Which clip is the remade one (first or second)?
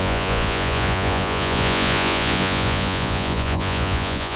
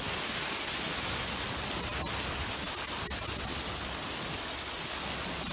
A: first